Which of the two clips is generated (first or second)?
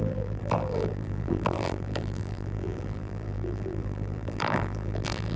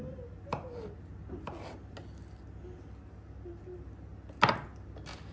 first